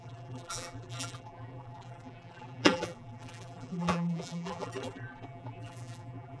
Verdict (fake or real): fake